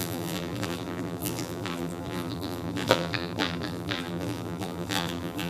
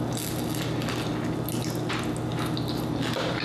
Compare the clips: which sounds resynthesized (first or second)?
first